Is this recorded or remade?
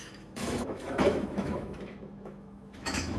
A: remade